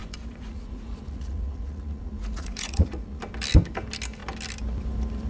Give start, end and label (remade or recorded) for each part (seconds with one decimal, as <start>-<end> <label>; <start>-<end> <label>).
0.0-3.2 remade; 3.2-5.3 recorded